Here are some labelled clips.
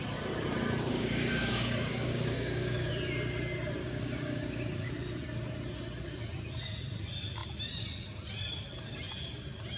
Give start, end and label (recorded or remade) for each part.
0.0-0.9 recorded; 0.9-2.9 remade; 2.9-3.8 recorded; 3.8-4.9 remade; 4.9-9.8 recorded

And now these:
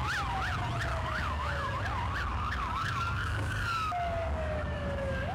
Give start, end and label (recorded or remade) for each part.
0.0-0.9 recorded; 0.9-1.8 remade; 1.8-2.3 recorded; 2.3-5.3 remade

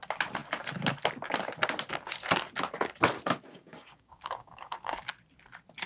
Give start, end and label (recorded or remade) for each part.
0.0-3.5 recorded; 3.5-5.1 remade; 5.1-5.9 recorded

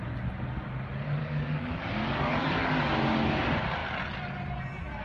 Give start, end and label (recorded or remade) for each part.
0.0-1.2 recorded; 1.2-2.9 remade; 2.9-5.0 recorded

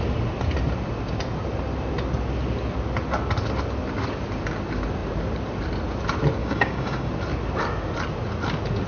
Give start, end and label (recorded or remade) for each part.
0.0-6.4 recorded; 6.4-7.1 remade; 7.1-8.9 recorded

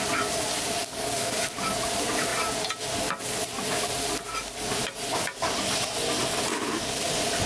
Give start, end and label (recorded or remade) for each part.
0.0-0.8 recorded; 0.8-1.5 remade; 1.5-6.5 recorded; 6.5-7.1 remade; 7.1-7.5 recorded